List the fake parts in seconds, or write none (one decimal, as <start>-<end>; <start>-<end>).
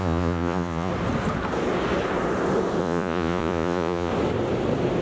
0.0-0.9; 2.8-4.1